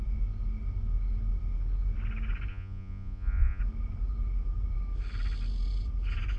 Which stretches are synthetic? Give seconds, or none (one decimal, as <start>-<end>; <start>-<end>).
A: 2.5-3.6